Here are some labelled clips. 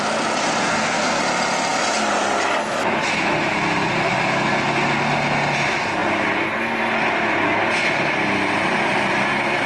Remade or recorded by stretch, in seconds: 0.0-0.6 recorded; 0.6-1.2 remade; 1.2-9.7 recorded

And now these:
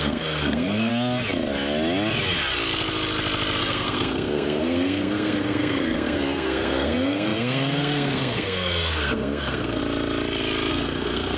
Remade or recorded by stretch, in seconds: 0.0-0.9 remade; 0.9-3.6 recorded; 3.6-9.8 remade; 9.8-10.7 recorded; 10.7-11.4 remade

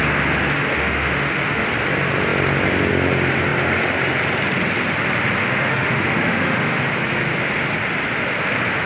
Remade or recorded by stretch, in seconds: 0.0-0.7 recorded; 0.7-1.7 remade; 1.7-5.4 recorded; 5.4-6.8 remade; 6.8-8.9 recorded